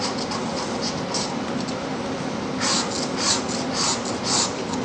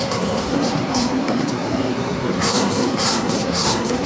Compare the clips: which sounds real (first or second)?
first